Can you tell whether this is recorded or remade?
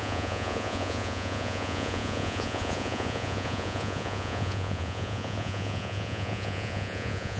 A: remade